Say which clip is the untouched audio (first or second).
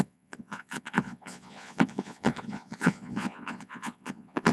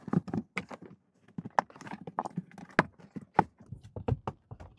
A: second